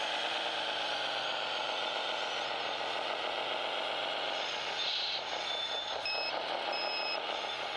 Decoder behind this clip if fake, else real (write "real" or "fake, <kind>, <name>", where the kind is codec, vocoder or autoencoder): real